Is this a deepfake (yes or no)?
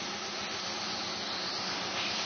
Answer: no